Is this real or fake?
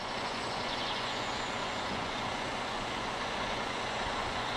fake